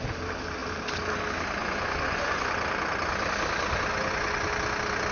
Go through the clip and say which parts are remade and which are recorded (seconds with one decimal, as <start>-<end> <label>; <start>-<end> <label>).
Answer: 0.0-1.6 recorded; 1.6-2.5 remade; 2.5-3.9 recorded; 3.9-4.5 remade; 4.5-5.1 recorded